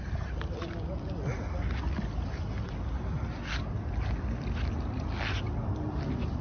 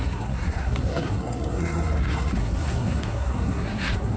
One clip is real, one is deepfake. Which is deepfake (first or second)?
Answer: second